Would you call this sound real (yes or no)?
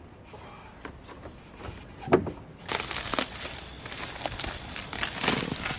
yes